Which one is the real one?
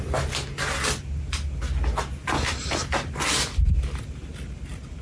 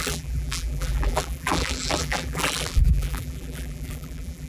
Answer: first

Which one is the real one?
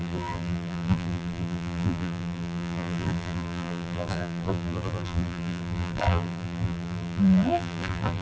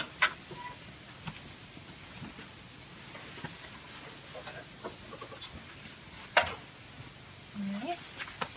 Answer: second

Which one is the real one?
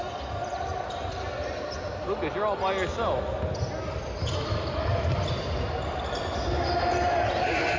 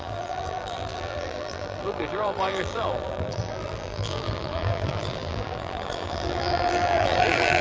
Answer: first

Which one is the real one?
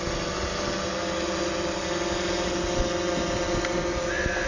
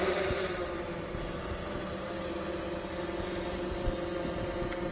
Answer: first